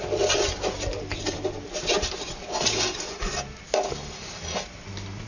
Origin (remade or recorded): recorded